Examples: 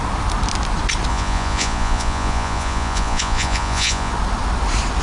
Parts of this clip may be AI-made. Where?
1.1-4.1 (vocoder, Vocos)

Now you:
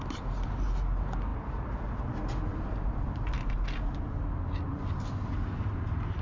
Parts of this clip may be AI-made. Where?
none